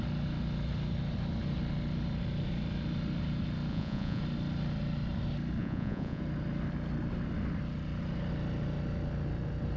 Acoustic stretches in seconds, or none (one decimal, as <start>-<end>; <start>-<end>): 0.0-3.7; 4.2-5.6; 6.2-9.8